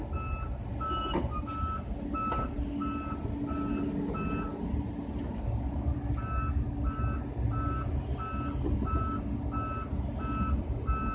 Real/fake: real